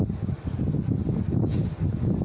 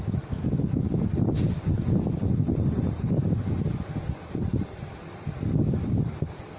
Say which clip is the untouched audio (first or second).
first